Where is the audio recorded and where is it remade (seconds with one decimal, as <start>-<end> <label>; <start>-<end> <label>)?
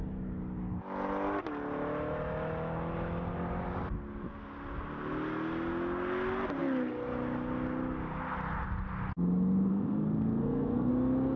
0.0-9.7 recorded; 9.7-10.9 remade; 10.9-11.4 recorded